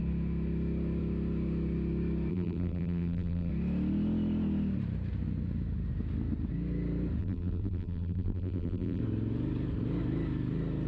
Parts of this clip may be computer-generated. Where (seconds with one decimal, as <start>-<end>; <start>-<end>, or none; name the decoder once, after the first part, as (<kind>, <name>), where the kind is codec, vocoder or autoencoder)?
2.3-3.5 (vocoder, BigVGAN v2); 7.2-9.0